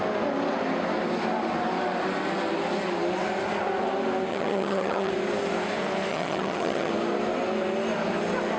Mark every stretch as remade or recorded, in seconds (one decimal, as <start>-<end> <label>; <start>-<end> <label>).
0.0-4.3 recorded; 4.3-5.1 remade; 5.1-6.1 recorded; 6.1-6.9 remade; 6.9-8.6 recorded